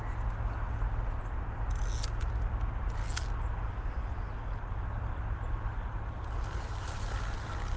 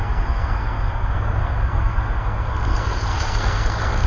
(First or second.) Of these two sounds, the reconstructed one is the second